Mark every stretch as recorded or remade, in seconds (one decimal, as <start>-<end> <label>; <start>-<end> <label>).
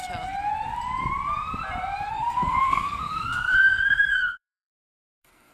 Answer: 0.0-2.1 recorded; 2.1-5.5 remade